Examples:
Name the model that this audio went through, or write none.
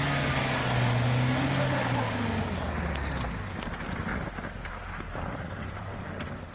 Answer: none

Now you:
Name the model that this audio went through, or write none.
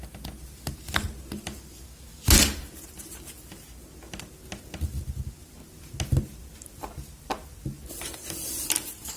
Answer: none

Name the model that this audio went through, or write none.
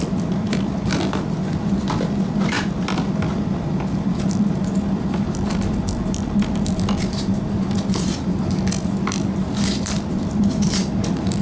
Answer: vocoder, BigVGAN v2